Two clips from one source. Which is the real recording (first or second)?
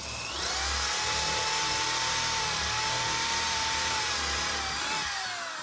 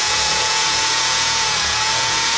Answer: first